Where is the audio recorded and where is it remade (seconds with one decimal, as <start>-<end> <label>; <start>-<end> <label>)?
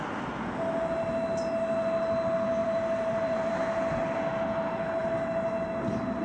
0.0-2.6 recorded; 2.6-3.5 remade; 3.5-6.2 recorded